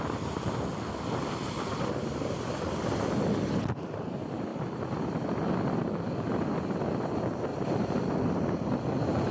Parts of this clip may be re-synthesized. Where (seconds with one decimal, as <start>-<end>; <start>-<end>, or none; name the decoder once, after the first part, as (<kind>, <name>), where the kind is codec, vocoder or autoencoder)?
4.5-5.7 (vocoder, BigVGAN v2)